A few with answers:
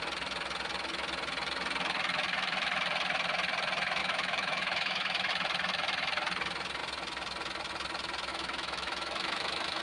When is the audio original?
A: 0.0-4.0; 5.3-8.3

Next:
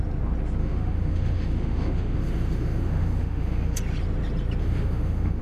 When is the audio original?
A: 0.0-0.6; 3.8-4.6

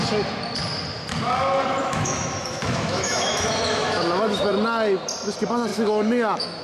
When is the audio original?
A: 0.0-1.8; 4.5-5.7